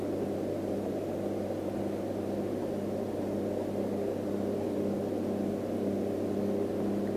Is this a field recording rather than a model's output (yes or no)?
yes